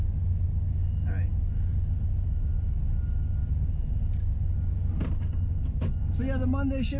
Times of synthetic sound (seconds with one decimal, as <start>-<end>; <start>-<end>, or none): none